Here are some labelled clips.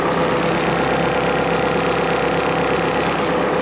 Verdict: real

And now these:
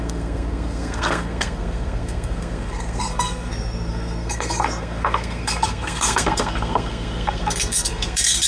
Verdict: fake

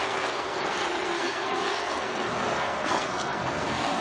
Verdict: fake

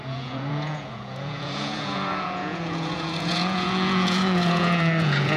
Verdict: fake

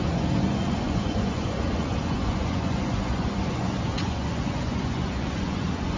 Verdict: fake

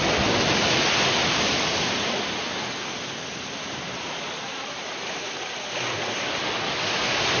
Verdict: real